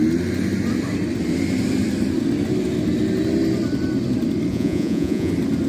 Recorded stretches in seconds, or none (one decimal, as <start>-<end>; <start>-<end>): 0.0-4.5; 5.3-5.7

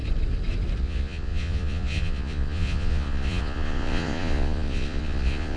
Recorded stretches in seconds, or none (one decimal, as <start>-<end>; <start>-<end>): 0.0-0.8

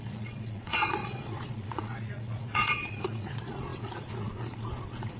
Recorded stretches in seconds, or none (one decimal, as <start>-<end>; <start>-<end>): none